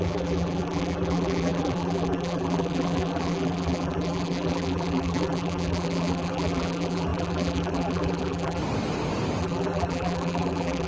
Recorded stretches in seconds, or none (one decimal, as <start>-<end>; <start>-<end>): 8.6-9.4